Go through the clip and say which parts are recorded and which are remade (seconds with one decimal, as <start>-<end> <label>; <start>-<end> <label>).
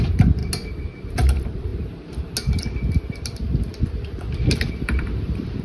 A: 0.0-0.4 remade; 0.4-1.1 recorded; 1.1-1.7 remade; 1.7-4.7 recorded; 4.7-5.6 remade